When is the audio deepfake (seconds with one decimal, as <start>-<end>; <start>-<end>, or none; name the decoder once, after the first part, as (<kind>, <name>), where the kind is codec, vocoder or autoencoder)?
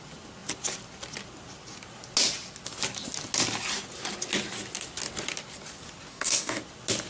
6.1-6.6 (codec, DAC)